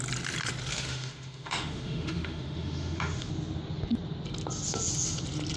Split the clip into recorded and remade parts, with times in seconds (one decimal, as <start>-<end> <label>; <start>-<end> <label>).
0.0-0.7 recorded; 0.7-3.3 remade; 3.3-5.6 recorded